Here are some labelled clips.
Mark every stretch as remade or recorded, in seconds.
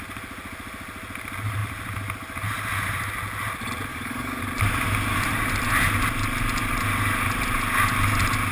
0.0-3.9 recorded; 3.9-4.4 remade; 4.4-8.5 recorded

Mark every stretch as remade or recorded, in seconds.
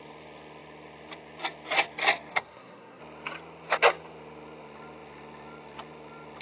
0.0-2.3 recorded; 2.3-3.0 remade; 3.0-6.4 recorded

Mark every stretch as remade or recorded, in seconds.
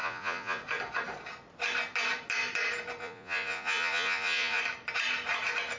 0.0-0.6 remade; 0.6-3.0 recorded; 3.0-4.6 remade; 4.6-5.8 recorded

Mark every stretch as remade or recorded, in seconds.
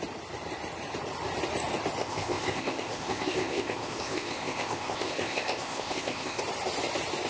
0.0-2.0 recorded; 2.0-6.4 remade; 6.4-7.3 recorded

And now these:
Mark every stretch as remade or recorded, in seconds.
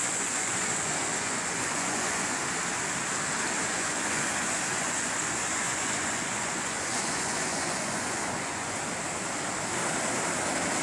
0.0-2.4 remade; 2.4-3.6 recorded; 3.6-8.8 remade; 8.8-10.8 recorded